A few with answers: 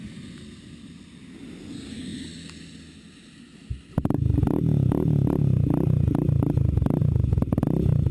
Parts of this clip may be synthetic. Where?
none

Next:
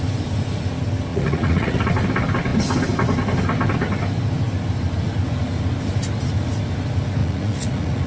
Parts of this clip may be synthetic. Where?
1.1-1.9 (vocoder, Vocos); 7.2-8.1

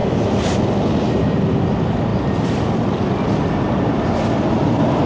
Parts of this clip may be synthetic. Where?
none

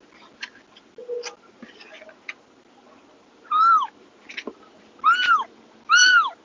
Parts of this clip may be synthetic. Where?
none

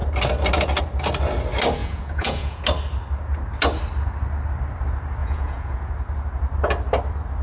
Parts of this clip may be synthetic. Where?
1.8-2.6 (vocoder, Vocos); 5.2-5.9

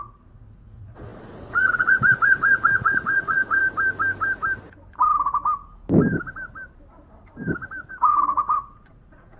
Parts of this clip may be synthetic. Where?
0.0-3.6 (vocoder, Vocos); 7.9-9.4